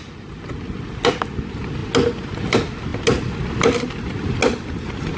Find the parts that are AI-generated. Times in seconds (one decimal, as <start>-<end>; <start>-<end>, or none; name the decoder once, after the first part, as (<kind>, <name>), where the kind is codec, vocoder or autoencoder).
none